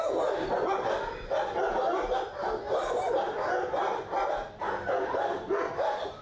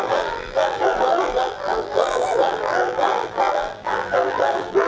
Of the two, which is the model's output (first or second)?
second